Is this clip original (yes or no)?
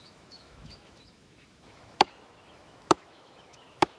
no